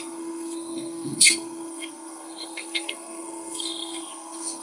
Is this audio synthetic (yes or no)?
yes